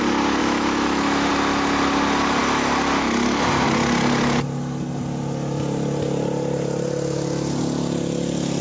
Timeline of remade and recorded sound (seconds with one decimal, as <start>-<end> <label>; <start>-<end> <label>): 0.0-0.4 recorded; 0.4-1.3 remade; 1.3-8.6 recorded